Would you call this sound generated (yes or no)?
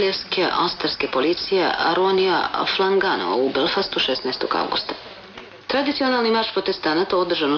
no